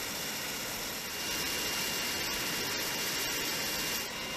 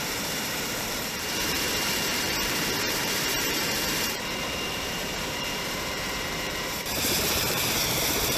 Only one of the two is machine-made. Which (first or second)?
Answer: second